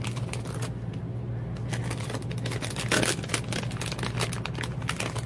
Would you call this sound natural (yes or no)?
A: yes